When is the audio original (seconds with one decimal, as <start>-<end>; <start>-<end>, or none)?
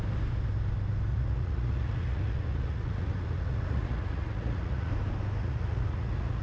0.0-1.1; 4.9-5.4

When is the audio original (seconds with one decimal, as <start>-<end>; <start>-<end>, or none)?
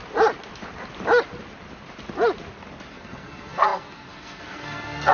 0.0-2.9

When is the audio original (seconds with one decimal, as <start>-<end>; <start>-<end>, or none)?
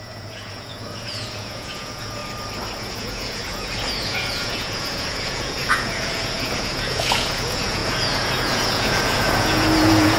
2.2-2.8